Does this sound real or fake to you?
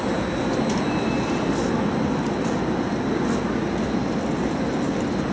real